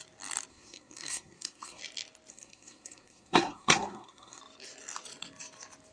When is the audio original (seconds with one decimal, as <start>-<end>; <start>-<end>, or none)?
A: 0.0-0.5; 1.8-2.3; 4.4-5.9